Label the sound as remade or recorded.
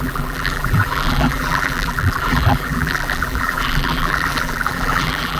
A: remade